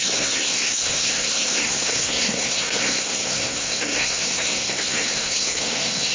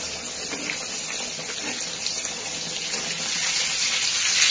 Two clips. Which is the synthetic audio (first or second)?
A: first